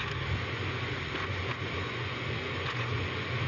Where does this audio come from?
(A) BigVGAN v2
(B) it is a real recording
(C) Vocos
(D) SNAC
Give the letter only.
C